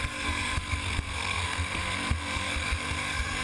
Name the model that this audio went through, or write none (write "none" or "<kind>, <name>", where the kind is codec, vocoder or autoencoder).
codec, SNAC